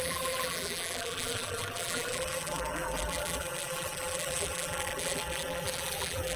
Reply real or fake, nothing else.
fake